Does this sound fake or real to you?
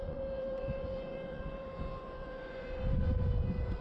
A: fake